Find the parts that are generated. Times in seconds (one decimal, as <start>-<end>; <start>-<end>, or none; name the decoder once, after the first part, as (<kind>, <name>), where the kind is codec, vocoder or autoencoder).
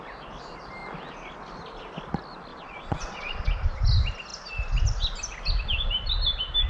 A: 2.5-3.5 (vocoder, Vocos)